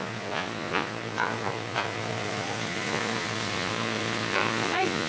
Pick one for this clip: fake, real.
fake